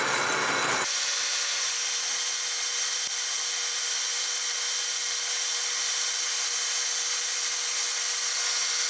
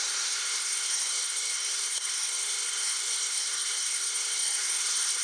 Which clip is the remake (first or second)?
second